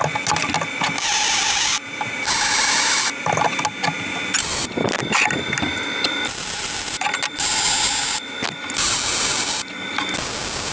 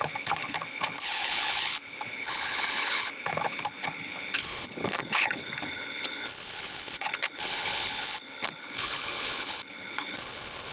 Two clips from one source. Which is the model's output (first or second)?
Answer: second